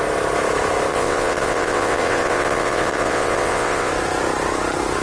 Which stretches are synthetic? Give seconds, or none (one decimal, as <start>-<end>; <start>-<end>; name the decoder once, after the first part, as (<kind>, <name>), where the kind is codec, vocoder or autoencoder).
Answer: 0.9-3.9 (vocoder, WaveNeXt)